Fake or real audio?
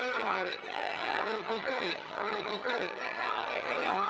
fake